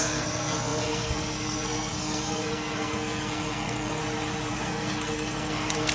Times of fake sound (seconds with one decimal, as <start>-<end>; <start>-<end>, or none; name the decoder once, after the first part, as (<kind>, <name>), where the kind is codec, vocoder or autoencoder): 0.0-4.0 (codec, SNAC); 4.5-5.9